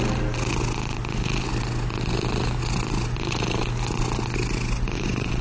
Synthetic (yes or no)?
no